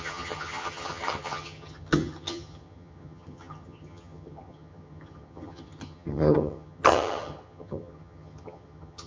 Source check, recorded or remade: remade